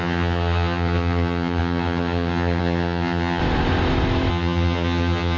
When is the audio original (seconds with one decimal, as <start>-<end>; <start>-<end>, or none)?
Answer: 3.4-4.3